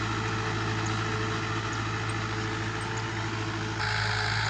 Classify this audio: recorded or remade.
recorded